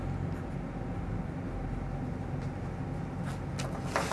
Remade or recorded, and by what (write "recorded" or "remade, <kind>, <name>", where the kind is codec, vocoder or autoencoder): recorded